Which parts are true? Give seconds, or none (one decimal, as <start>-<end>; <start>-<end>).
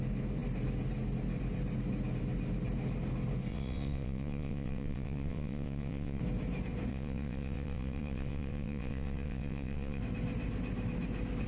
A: 0.0-3.5; 6.2-6.9; 10.0-11.5